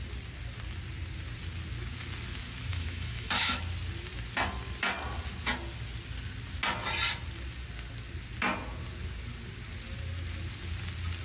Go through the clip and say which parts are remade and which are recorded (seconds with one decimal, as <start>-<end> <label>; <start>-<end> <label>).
0.0-2.7 recorded; 2.7-3.6 remade; 3.6-11.2 recorded